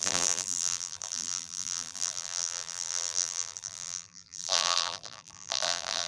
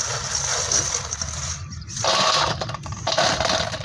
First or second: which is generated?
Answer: first